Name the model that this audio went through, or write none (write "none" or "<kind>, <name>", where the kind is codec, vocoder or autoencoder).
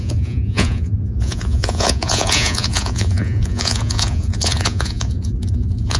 vocoder, Vocos